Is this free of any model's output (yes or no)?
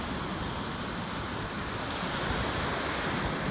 yes